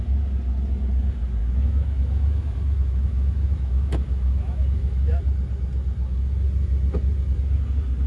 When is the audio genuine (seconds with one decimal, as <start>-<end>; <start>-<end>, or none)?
0.0-1.4; 5.2-8.1